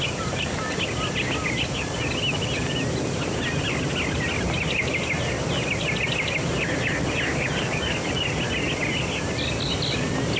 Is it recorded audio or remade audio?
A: recorded